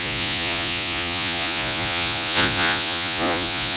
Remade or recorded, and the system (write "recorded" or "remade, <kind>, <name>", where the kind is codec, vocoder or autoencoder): remade, vocoder, Vocos